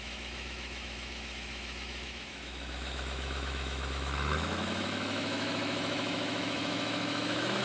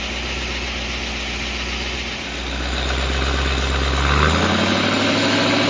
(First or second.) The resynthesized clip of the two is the first